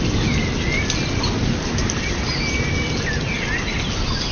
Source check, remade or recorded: recorded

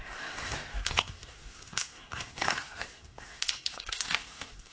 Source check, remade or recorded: remade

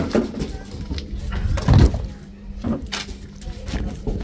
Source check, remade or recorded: recorded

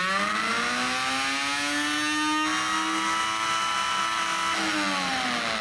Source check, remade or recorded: recorded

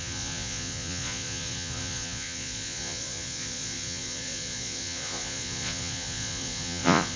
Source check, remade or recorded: remade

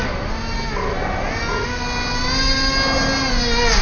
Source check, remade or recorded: recorded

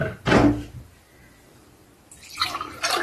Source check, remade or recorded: recorded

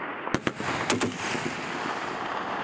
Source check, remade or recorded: recorded